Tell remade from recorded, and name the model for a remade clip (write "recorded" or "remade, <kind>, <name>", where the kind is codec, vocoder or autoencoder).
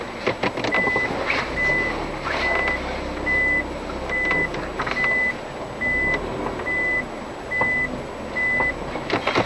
recorded